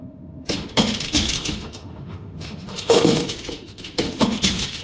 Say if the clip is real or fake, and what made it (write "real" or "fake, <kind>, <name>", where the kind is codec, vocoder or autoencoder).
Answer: fake, autoencoder, DAC-VAE